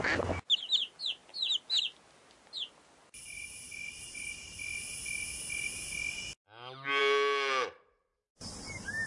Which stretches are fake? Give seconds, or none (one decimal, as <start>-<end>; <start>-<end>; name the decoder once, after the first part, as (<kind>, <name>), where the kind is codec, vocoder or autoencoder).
none